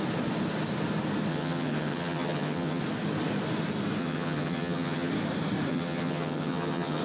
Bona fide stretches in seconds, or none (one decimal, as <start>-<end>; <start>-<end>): 0.0-1.3; 2.8-4.0; 5.1-5.7

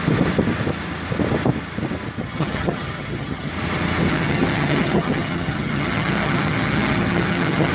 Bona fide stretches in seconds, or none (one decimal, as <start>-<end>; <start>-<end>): 0.0-2.2; 3.5-4.1

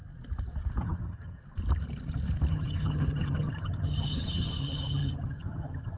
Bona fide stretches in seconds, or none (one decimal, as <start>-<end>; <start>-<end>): 0.0-0.8; 1.4-2.5

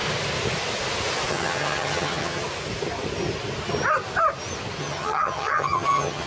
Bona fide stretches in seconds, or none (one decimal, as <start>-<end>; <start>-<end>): 0.0-1.3; 2.4-4.8

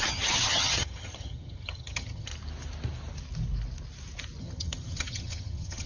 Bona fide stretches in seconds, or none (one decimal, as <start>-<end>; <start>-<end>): 2.3-4.4

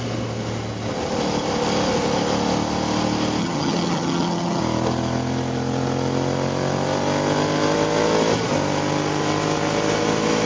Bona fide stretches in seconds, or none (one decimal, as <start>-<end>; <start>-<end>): 0.0-3.4; 4.6-10.5